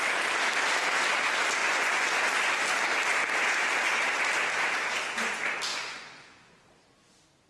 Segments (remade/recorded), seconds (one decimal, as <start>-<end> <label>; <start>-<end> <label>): 0.0-1.6 recorded; 1.6-2.2 remade; 2.2-5.7 recorded; 5.7-6.6 remade; 6.6-7.5 recorded